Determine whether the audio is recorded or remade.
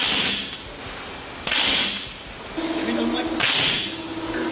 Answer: recorded